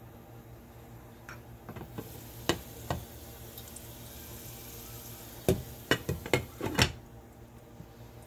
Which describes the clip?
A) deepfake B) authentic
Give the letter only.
B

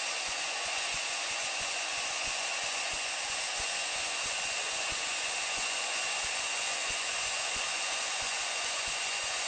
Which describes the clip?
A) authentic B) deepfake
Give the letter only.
B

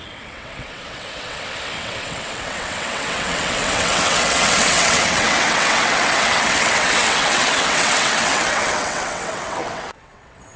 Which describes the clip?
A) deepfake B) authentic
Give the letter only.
A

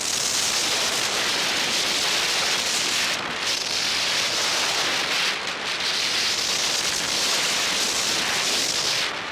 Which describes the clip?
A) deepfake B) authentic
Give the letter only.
B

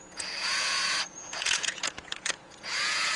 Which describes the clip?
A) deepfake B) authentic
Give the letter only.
A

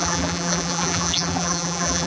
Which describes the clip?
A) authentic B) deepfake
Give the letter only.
B